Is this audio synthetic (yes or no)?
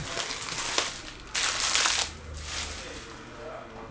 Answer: no